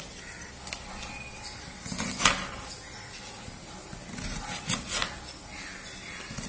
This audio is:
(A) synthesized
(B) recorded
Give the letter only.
B